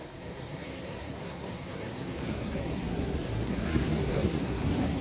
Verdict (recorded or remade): remade